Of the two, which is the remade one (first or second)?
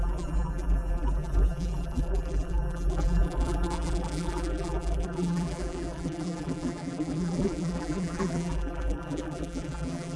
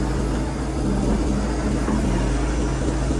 first